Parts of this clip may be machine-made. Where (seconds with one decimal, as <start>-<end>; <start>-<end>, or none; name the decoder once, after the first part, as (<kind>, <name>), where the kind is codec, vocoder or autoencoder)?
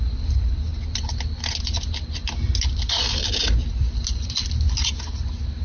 none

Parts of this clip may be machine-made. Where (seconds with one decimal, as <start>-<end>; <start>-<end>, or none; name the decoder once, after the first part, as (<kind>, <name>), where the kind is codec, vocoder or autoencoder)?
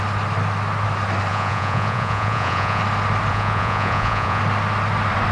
1.3-2.8 (vocoder, Vocos); 3.3-4.4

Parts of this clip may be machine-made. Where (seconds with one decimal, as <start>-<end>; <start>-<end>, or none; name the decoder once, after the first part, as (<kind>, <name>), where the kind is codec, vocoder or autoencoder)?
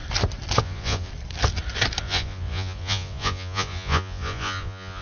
0.6-1.1 (vocoder, Vocos); 2.0-5.0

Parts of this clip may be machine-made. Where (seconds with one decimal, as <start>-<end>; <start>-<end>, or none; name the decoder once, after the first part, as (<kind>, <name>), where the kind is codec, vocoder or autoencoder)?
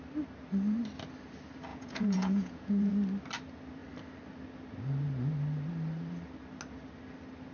1.7-2.9 (vocoder, Vocos)